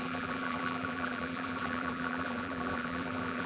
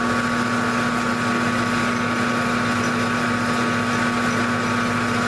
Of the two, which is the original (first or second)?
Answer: second